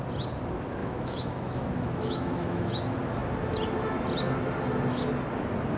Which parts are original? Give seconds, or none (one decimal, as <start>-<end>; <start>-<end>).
0.0-0.8; 2.7-5.8